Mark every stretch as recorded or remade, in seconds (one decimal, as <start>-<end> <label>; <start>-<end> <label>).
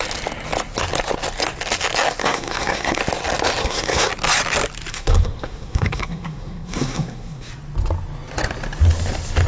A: 0.0-2.2 recorded; 2.2-3.0 remade; 3.0-3.6 recorded; 3.6-4.1 remade; 4.1-4.9 recorded; 4.9-7.5 remade; 7.5-9.5 recorded